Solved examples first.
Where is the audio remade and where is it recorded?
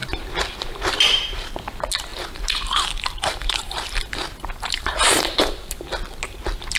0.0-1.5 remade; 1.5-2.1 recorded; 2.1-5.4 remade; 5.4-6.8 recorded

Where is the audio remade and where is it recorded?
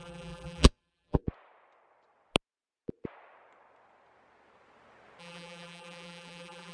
0.0-1.2 remade; 1.2-5.2 recorded; 5.2-6.7 remade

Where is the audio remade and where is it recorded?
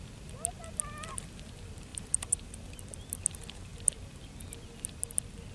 0.0-1.9 recorded; 1.9-2.7 remade; 2.7-5.5 recorded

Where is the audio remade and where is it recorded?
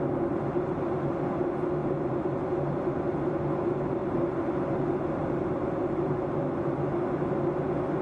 0.0-1.8 recorded; 1.8-2.4 remade; 2.4-4.0 recorded; 4.0-6.4 remade; 6.4-8.0 recorded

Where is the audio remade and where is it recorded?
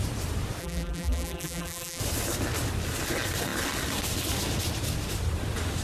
0.0-0.6 recorded; 0.6-2.0 remade; 2.0-5.8 recorded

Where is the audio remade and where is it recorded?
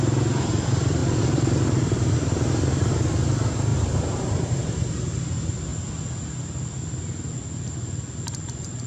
0.0-3.7 recorded; 3.7-4.9 remade; 4.9-8.9 recorded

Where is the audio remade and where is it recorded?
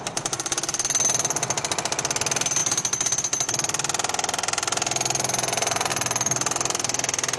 0.0-7.4 recorded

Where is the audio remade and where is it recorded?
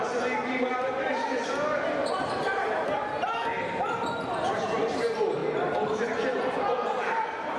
0.0-2.0 recorded; 2.0-3.0 remade; 3.0-4.5 recorded; 4.5-5.0 remade; 5.0-7.6 recorded